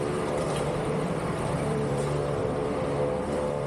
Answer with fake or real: fake